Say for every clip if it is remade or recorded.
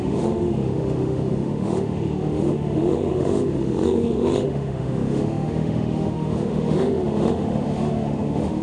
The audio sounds remade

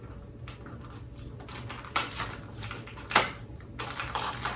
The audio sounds recorded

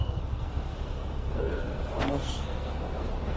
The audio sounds remade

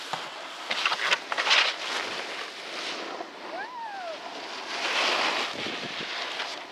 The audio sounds recorded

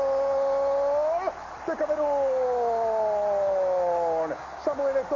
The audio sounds recorded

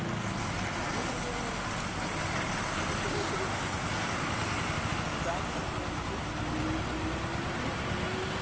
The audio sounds recorded